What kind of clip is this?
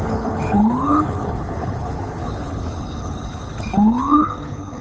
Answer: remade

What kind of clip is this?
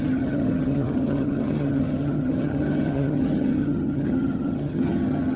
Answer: remade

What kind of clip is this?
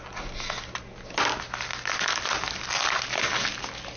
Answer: recorded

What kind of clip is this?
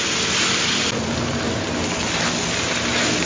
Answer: recorded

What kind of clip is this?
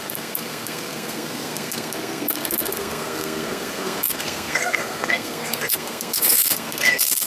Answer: remade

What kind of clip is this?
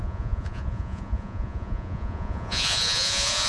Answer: remade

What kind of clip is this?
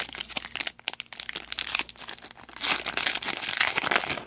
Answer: recorded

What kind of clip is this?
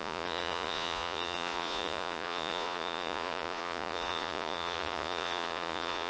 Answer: remade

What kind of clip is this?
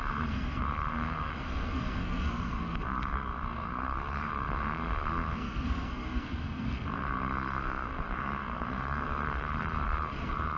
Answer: remade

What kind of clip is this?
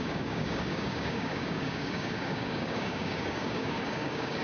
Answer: remade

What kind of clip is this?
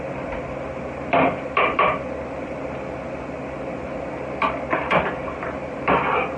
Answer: recorded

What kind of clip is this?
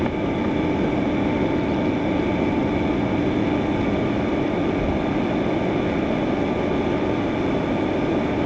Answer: recorded